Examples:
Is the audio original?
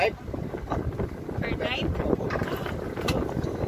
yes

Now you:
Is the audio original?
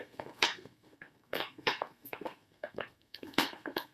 no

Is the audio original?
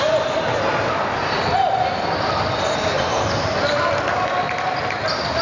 yes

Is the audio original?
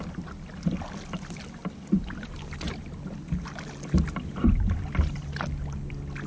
yes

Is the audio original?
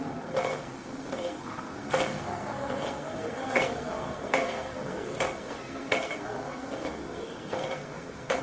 no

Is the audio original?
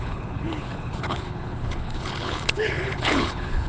no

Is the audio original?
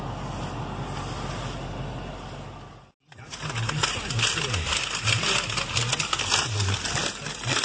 yes